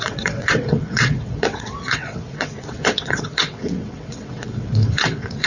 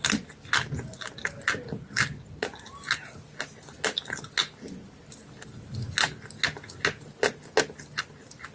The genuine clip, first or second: second